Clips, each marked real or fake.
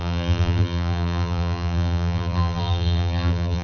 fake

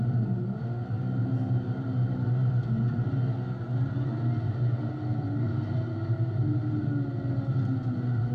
real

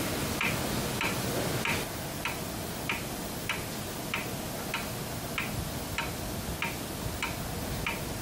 real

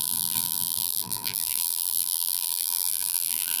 fake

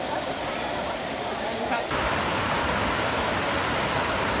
fake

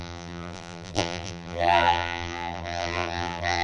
fake